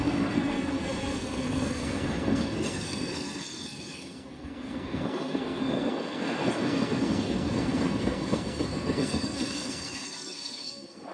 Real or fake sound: fake